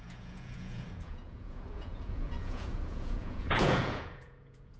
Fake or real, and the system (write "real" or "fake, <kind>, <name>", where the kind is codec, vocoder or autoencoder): fake, vocoder, Vocos